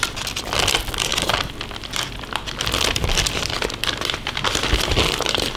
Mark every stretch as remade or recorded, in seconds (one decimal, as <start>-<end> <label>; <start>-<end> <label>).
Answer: 0.0-5.6 recorded